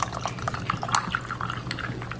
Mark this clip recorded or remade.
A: recorded